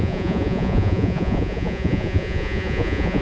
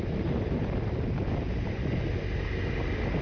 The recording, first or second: second